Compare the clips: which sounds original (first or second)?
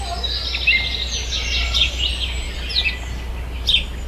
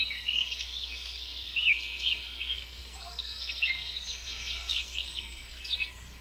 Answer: first